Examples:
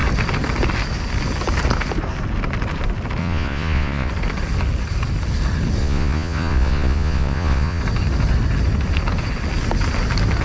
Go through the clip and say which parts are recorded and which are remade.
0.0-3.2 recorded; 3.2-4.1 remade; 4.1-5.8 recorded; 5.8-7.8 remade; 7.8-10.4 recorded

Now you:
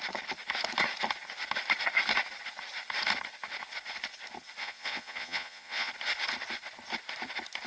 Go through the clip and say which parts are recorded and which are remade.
0.0-4.6 recorded; 4.6-5.9 remade; 5.9-7.7 recorded

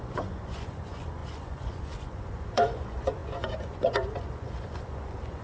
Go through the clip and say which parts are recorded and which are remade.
0.0-5.4 remade

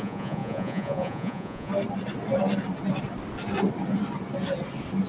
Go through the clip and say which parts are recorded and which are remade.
0.0-1.7 remade; 1.7-5.1 recorded

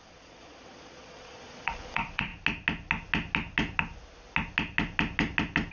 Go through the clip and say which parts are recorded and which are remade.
0.0-2.3 remade; 2.3-5.7 recorded